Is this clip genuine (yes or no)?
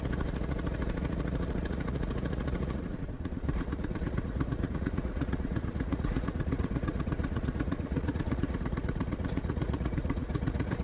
no